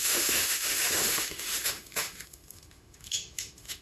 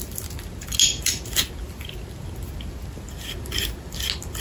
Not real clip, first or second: first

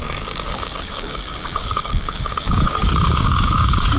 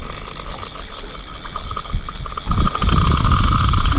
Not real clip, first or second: first